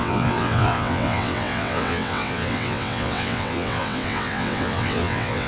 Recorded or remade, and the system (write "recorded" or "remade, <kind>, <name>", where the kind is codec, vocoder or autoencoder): remade, vocoder, WaveNeXt